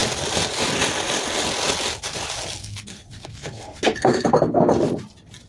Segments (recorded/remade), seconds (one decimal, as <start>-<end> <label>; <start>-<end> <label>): 0.0-2.6 recorded; 2.6-4.7 remade; 4.7-5.5 recorded